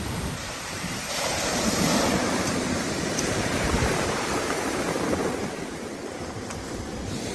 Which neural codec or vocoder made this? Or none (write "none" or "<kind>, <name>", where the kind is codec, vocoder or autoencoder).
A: vocoder, BigVGAN v2